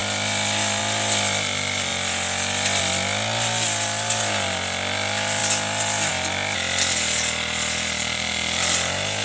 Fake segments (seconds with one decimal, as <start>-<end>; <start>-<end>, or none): none